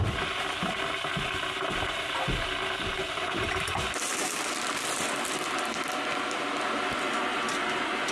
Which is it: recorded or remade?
recorded